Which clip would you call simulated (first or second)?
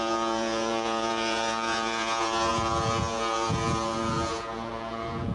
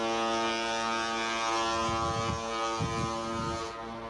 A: first